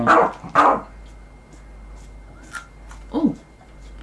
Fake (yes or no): no